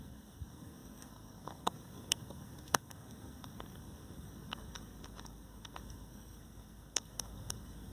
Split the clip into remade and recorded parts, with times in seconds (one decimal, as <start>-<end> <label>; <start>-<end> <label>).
0.0-7.9 remade